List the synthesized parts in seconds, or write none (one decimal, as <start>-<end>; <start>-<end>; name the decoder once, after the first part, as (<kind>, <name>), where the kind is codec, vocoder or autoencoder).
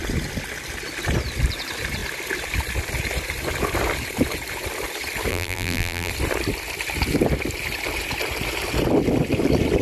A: 5.3-6.1 (vocoder, BigVGAN v2)